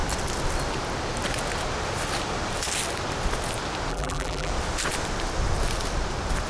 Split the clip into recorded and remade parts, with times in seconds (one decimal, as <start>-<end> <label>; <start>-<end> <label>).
0.0-3.9 recorded; 3.9-4.5 remade; 4.5-6.5 recorded